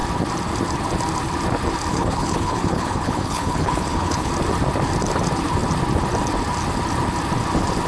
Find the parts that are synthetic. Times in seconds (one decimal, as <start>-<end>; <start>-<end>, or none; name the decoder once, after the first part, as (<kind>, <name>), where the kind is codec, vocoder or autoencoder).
1.9-4.3 (codec, HILCodec)